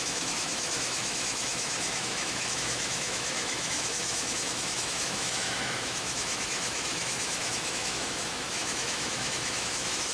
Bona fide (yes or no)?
no